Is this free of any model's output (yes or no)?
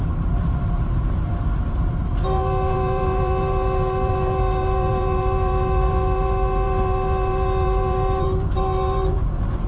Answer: no